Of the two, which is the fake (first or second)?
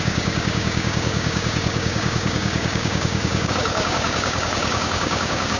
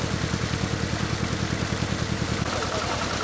first